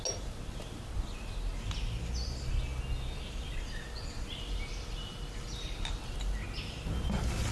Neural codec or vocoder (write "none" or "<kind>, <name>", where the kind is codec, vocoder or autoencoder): none